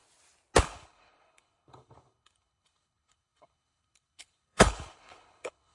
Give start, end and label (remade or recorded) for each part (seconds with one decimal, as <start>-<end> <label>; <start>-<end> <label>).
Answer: 0.0-0.6 recorded; 0.6-5.7 remade